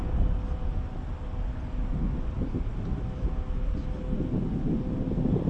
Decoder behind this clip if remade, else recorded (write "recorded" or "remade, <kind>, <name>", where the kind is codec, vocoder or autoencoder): recorded